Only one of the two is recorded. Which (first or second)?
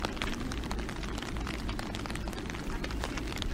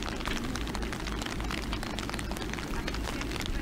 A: second